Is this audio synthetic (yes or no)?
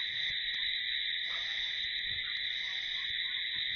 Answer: no